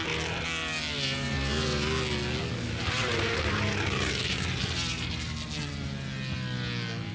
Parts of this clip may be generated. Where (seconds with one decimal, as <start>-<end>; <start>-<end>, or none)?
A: none